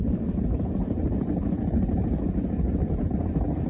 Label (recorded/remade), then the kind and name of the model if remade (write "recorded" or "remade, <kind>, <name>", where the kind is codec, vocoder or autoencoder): remade, vocoder, BigVGAN v2